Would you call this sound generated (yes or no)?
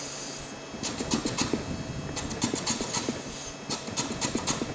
no